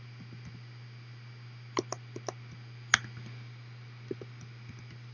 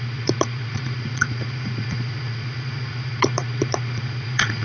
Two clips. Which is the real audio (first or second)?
first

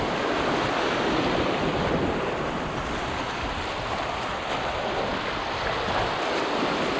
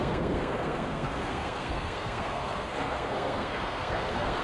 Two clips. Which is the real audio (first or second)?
first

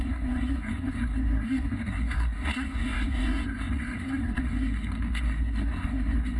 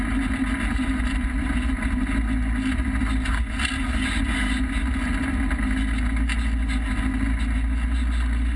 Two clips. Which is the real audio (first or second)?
second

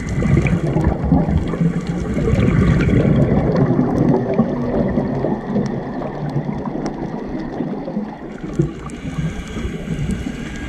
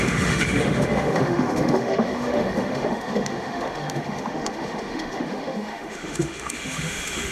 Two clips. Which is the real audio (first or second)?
first